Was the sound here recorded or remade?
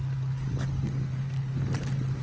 recorded